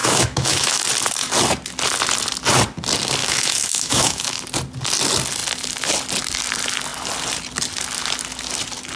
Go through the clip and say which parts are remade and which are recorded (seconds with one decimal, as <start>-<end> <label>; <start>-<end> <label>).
0.0-0.8 remade; 0.8-3.2 recorded; 3.2-4.4 remade; 4.4-9.0 recorded